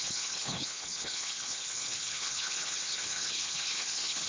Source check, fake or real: fake